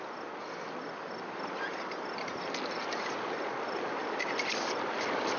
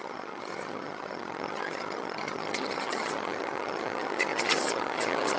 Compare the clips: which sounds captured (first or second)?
first